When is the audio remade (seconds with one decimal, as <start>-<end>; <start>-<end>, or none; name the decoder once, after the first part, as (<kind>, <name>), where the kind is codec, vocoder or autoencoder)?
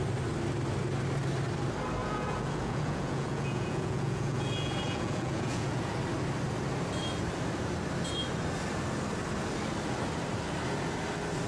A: 2.0-5.9 (vocoder, Vocos)